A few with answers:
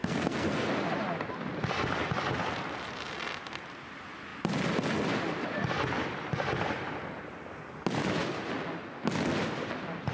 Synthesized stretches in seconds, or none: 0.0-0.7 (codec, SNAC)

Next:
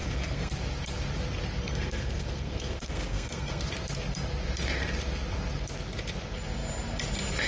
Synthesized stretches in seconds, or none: 0.0-0.5 (codec, SNAC); 1.6-3.6

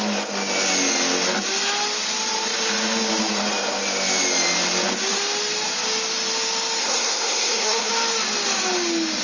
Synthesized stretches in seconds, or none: 6.8-7.9 (codec, SNAC)

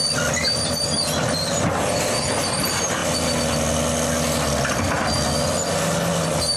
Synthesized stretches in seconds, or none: none

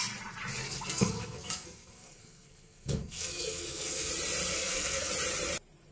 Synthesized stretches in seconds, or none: 0.6-4.1 (codec, SNAC); 4.5-5.1